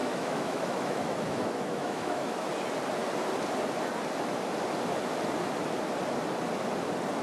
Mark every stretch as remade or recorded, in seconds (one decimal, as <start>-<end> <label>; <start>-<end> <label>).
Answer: 0.0-2.5 remade; 2.5-7.2 recorded

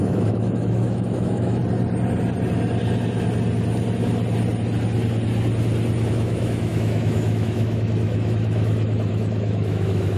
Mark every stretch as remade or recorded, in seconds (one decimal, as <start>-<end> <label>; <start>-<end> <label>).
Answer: 0.0-1.6 remade; 1.6-6.1 recorded; 6.1-10.2 remade

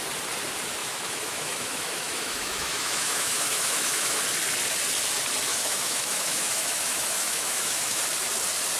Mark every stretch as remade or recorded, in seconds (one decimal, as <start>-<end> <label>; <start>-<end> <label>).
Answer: 0.0-0.8 recorded; 0.8-4.2 remade; 4.2-5.5 recorded; 5.5-8.0 remade; 8.0-8.8 recorded

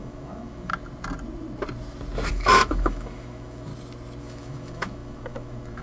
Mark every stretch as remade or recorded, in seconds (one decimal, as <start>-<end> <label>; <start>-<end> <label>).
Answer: 0.0-0.7 remade; 0.7-2.3 recorded; 2.3-3.7 remade; 3.7-4.2 recorded; 4.2-5.8 remade

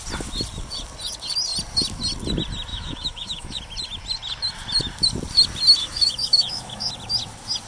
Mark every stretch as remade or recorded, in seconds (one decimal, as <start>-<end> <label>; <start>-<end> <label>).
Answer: 0.0-2.7 recorded; 2.7-3.6 remade; 3.6-5.8 recorded; 5.8-6.9 remade; 6.9-7.7 recorded

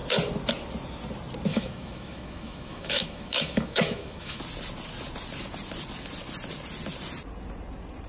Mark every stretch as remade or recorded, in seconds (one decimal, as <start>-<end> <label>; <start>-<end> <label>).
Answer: 0.0-1.5 recorded; 1.5-4.4 remade; 4.4-8.1 recorded